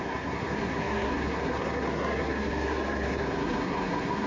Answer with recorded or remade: remade